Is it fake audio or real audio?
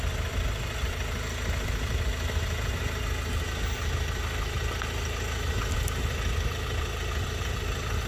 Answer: real